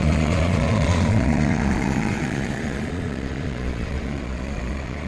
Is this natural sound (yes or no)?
no